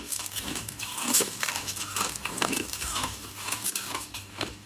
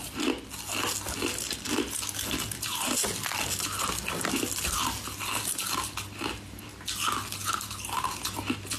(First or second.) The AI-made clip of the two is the first